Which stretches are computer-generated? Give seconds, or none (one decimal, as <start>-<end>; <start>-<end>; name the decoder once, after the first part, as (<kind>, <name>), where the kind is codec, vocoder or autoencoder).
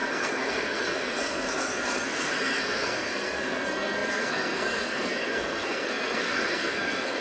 0.0-7.2 (codec, SNAC)